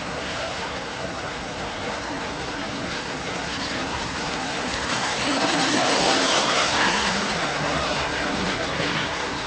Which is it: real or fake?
fake